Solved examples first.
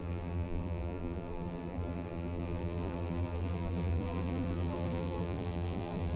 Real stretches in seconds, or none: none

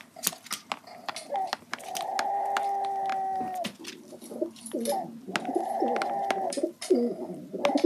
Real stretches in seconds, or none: 0.0-7.9